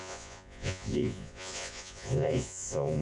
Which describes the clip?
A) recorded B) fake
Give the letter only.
B